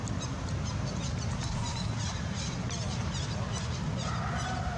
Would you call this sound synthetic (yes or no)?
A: no